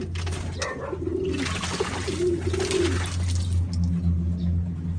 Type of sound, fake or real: real